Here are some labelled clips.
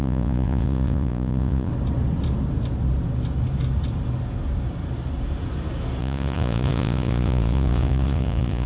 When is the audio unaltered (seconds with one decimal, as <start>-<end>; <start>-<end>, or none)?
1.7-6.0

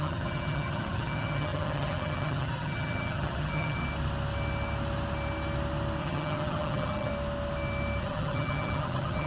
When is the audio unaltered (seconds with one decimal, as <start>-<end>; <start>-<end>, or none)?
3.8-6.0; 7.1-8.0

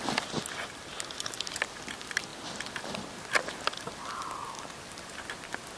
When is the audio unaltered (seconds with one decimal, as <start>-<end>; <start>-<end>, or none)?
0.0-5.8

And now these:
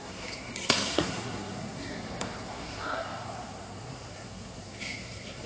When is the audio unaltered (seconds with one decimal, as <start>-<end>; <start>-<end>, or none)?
none